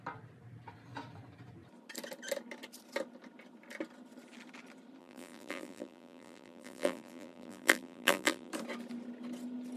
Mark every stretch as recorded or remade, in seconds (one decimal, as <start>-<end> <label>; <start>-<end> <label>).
0.0-5.0 recorded; 5.0-8.5 remade; 8.5-9.8 recorded